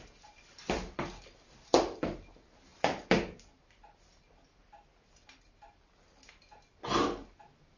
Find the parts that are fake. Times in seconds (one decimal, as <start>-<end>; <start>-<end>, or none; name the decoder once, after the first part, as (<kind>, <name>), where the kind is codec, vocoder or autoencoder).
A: none